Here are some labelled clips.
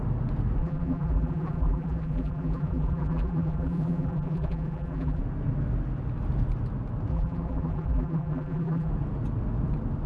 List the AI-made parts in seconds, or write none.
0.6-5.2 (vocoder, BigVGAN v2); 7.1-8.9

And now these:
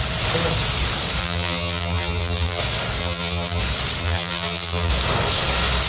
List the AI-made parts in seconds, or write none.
1.2-2.6 (vocoder, BigVGAN v2); 3.0-3.6; 4.0-4.9

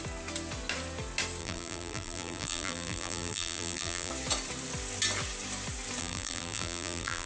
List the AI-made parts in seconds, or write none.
1.4-4.1 (vocoder, BigVGAN v2); 6.0-7.3

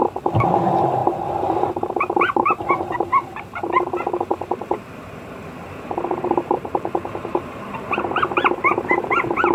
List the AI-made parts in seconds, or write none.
1.0-3.7 (vocoder, BigVGAN v2); 4.3-9.0

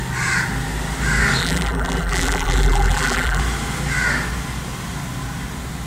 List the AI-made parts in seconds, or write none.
1.4-3.4 (vocoder, BigVGAN v2)

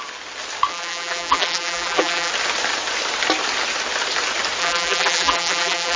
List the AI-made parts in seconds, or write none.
0.7-2.3 (vocoder, BigVGAN v2); 4.6-6.0

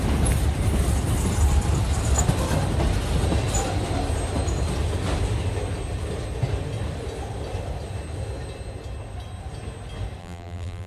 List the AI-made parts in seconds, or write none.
10.2-10.9 (vocoder, BigVGAN v2)

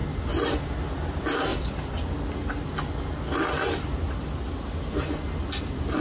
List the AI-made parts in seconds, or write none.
none